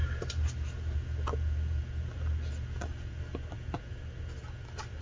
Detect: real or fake real